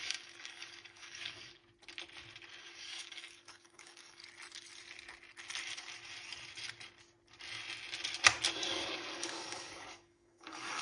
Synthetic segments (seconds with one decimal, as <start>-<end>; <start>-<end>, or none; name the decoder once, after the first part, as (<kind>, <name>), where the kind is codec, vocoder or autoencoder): 0.0-1.6 (codec, DAC); 2.6-4.2; 8.5-10.8